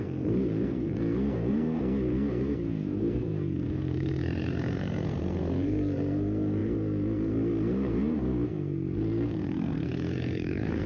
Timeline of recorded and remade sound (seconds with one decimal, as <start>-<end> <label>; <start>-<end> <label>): 0.0-10.9 remade